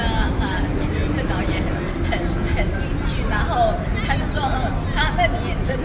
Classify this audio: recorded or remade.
recorded